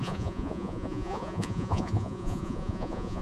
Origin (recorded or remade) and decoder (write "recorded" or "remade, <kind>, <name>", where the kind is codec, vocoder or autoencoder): remade, vocoder, Vocos